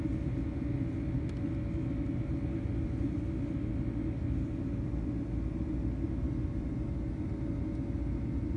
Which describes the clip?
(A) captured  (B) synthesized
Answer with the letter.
A